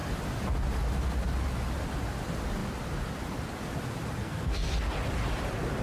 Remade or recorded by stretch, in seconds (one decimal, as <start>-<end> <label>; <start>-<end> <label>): 0.0-4.2 recorded; 4.2-4.7 remade; 4.7-5.8 recorded